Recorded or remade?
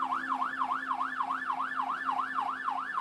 recorded